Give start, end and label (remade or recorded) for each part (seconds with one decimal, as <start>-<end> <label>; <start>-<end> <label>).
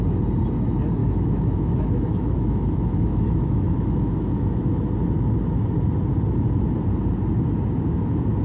0.0-1.0 recorded; 1.0-4.7 remade; 4.7-8.4 recorded